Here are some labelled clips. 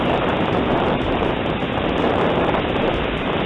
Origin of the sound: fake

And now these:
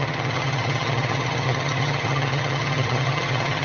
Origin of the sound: fake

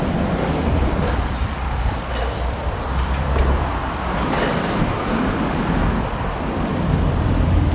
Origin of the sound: fake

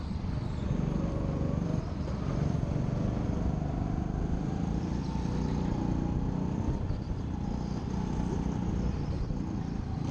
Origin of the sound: real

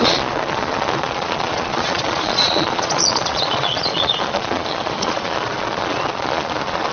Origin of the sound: fake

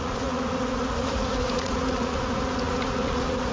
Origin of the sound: fake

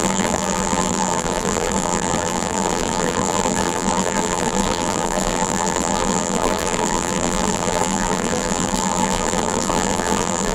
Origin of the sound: fake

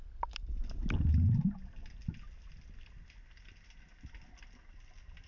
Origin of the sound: real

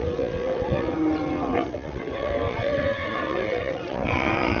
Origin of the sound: fake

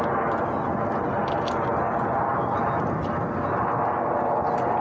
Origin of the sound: real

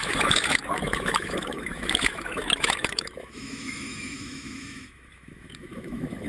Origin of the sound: fake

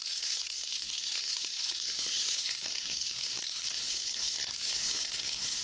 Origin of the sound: fake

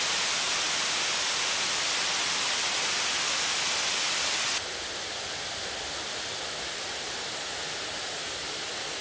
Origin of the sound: real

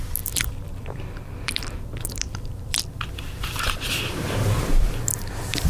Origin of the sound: fake